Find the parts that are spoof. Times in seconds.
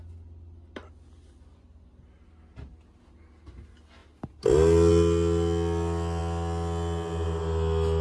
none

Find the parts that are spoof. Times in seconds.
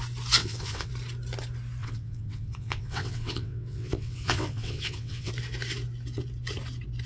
0.4-0.9 (vocoder, WaveNeXt); 1.8-5.3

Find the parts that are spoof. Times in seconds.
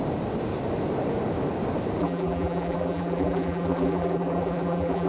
2.0-5.1 (vocoder, BigVGAN v2)